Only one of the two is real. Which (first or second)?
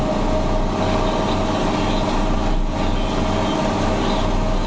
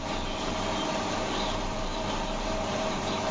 first